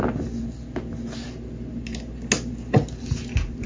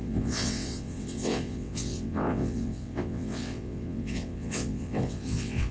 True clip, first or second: first